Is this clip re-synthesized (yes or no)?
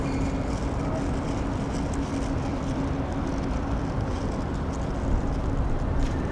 no